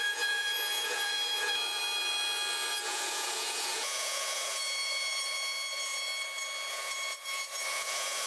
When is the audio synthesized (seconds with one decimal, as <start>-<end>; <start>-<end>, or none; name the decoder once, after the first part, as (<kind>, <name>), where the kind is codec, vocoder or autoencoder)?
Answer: 0.0-1.8 (vocoder, Vocos); 2.7-6.1; 6.7-8.3